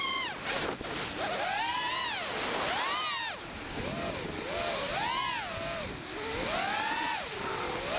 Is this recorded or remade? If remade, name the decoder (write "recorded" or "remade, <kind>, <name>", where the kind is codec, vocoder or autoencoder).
recorded